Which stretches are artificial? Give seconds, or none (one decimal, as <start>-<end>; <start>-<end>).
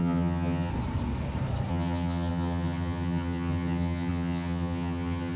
0.0-0.7; 1.7-5.4